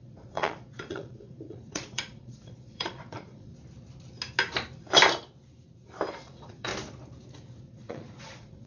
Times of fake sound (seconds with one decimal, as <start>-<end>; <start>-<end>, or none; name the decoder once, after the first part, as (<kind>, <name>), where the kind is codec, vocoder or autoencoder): 0.0-3.5 (vocoder, Vocos); 6.1-6.7; 7.6-8.7